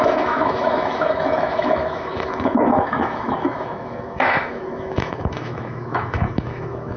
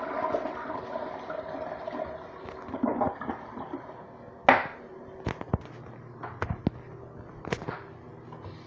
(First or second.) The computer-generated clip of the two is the first